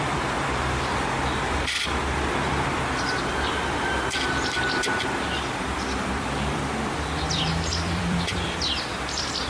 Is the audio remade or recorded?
remade